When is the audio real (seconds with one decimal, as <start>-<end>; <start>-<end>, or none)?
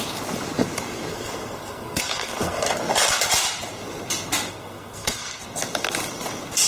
0.0-1.1; 2.7-4.5; 5.4-6.7